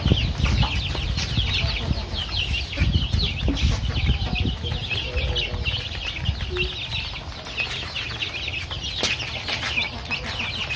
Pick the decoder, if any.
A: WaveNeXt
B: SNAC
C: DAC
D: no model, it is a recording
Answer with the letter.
D